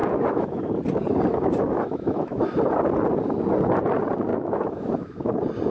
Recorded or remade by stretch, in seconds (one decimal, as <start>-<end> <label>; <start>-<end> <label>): 0.0-0.7 remade; 0.7-1.3 recorded; 1.3-2.5 remade; 2.5-4.3 recorded; 4.3-5.3 remade; 5.3-5.7 recorded